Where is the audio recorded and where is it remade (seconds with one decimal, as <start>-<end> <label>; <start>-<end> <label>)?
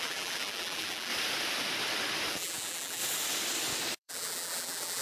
0.0-1.1 remade; 1.1-2.3 recorded; 2.3-3.0 remade; 3.0-4.0 recorded; 4.0-5.0 remade